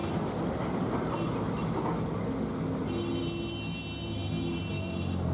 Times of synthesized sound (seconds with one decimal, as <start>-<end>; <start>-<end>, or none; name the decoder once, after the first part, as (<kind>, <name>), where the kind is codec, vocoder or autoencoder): none